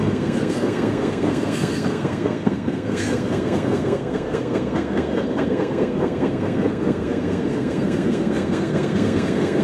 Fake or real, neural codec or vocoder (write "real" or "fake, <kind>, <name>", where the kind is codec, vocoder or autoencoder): fake, codec, SNAC